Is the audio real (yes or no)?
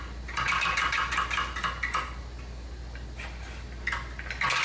yes